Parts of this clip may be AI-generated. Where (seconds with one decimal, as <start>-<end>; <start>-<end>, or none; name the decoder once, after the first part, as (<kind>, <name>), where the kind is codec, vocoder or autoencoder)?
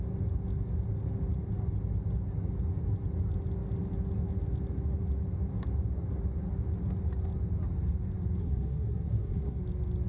8.4-9.6 (codec, SNAC)